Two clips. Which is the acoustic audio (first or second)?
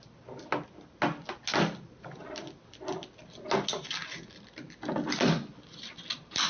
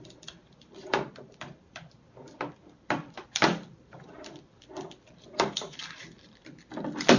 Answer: first